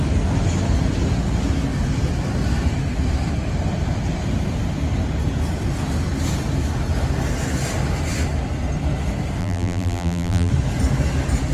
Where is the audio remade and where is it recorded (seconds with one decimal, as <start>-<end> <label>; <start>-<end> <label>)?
0.0-9.4 recorded; 9.4-10.5 remade; 10.5-11.5 recorded